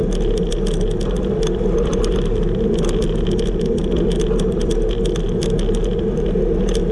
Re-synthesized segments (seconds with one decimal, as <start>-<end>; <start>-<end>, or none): none